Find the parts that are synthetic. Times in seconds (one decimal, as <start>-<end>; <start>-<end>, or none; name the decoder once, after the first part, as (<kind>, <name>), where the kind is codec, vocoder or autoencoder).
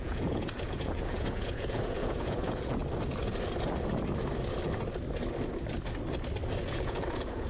0.0-2.8 (vocoder, Vocos); 6.7-7.5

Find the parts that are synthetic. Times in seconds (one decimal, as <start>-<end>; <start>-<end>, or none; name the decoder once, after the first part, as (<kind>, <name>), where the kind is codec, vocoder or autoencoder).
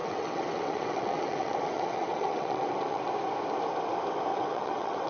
0.0-3.1 (vocoder, WaveNeXt); 4.3-5.1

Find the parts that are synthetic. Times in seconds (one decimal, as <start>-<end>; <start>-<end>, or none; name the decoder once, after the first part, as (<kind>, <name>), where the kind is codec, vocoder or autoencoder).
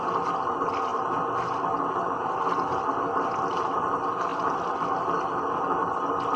none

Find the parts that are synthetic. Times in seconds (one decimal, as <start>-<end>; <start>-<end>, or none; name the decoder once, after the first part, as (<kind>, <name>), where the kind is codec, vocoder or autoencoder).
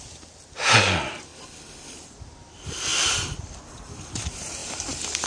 1.3-2.1 (vocoder, BigVGAN v2); 2.9-3.6; 4.6-5.3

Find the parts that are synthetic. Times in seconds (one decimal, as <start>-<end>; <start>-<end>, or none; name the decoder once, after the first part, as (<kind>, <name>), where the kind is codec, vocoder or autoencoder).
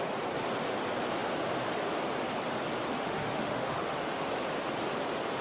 2.9-4.3 (autoencoder, DAC-VAE)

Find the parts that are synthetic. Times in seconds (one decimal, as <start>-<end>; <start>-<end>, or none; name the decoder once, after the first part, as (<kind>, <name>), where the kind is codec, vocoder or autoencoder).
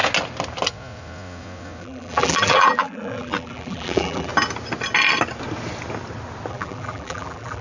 1.8-4.3 (vocoder, BigVGAN v2); 6.5-7.6